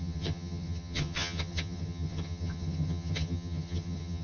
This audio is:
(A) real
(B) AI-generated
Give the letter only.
B